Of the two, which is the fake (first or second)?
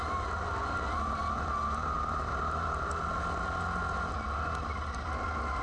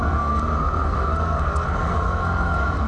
second